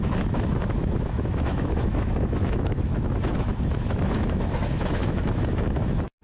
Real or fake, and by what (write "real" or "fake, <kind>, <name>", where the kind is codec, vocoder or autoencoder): fake, autoencoder, DAC-VAE